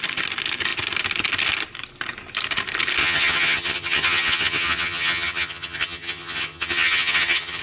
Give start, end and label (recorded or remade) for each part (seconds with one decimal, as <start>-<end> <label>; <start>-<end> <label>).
0.0-3.0 recorded; 3.0-7.6 remade